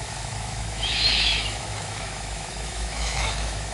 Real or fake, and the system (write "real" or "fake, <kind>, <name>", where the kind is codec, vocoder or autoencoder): fake, autoencoder, DAC-VAE